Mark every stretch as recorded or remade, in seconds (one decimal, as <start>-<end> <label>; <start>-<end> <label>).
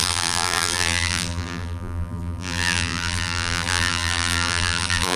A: 0.0-5.2 remade